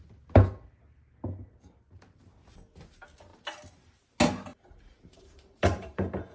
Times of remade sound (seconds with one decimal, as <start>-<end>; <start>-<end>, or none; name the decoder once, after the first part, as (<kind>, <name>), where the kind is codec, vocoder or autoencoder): 4.5-6.3 (vocoder, BigVGAN v2)